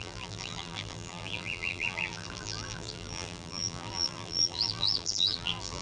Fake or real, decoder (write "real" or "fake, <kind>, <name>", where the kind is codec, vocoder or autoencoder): fake, vocoder, BigVGAN v2